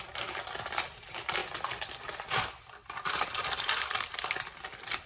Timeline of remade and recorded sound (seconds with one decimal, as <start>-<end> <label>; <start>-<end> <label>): 0.0-1.4 recorded; 1.4-4.4 remade; 4.4-5.1 recorded